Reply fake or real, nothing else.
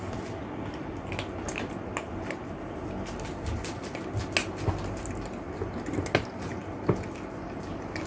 real